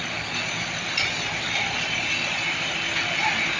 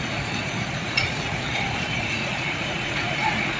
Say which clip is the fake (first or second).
second